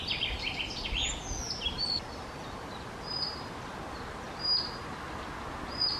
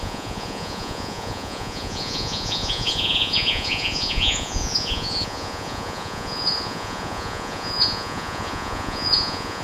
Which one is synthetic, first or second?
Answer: second